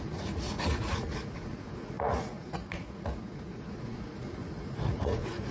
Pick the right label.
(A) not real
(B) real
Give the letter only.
A